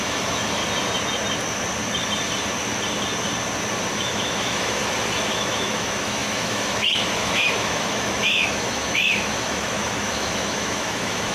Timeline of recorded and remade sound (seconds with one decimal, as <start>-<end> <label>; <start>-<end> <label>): 0.0-0.6 remade; 0.6-3.9 recorded; 3.9-4.8 remade; 4.8-5.3 recorded; 5.3-11.3 remade